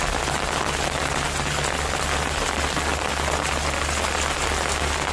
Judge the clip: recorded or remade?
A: recorded